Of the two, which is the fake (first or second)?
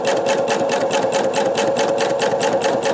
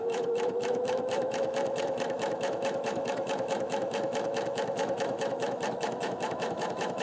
second